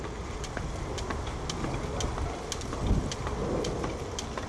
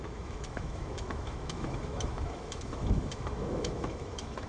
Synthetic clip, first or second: second